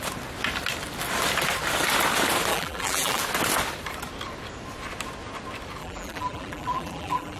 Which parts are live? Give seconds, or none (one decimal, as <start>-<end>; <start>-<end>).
0.0-2.5; 3.2-5.8